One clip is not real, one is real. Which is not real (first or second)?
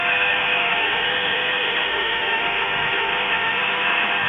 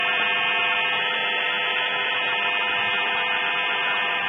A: first